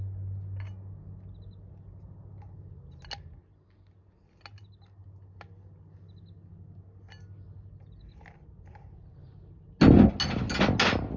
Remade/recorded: recorded